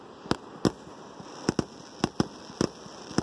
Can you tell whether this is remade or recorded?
recorded